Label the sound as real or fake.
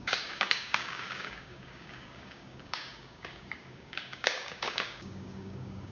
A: fake